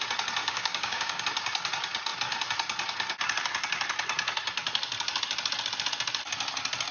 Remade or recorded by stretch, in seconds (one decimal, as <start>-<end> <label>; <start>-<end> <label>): 0.0-0.4 recorded; 0.4-1.2 remade; 1.2-6.9 recorded